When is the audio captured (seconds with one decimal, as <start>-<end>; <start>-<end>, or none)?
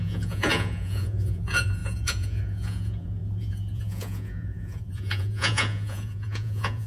none